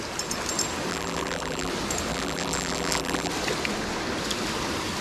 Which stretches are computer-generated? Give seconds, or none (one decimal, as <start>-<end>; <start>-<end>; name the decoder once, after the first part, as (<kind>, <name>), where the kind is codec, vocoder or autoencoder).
0.9-1.7 (vocoder, BigVGAN v2); 2.1-3.3